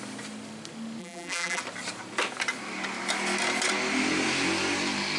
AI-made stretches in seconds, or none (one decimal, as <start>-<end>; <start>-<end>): 1.0-1.6